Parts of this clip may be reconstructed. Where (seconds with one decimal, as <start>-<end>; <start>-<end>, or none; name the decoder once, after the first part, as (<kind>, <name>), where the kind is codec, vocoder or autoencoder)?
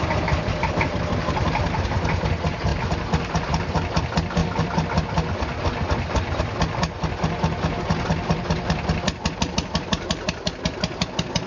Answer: none